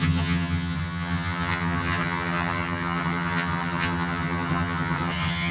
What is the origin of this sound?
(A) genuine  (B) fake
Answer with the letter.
B